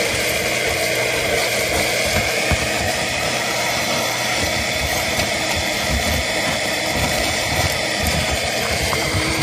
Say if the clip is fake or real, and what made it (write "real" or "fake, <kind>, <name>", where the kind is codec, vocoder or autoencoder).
fake, vocoder, BigVGAN v2